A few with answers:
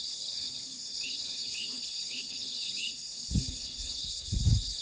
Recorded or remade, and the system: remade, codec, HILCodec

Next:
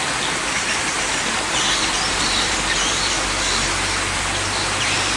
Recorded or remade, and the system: recorded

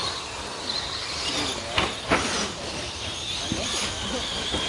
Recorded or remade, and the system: recorded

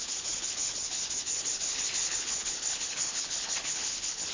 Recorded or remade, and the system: remade, codec, HILCodec